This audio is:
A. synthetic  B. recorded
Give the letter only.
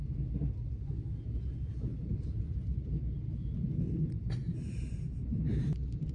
B